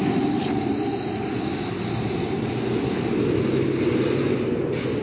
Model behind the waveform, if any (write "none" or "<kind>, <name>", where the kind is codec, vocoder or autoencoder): none